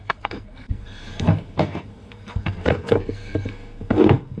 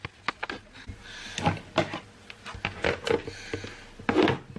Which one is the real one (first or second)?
second